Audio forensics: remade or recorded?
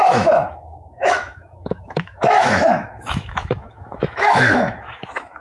remade